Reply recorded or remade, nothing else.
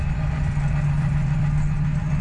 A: remade